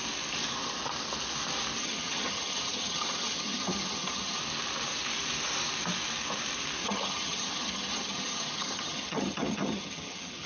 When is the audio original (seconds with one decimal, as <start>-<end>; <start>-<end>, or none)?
0.0-1.8; 4.4-6.8